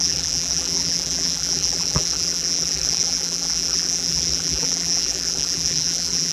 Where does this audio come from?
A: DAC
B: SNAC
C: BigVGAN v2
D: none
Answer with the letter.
C